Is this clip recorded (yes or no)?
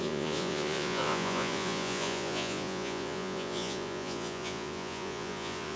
no